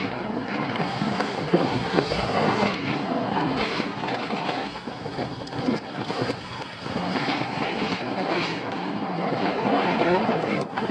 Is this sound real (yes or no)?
no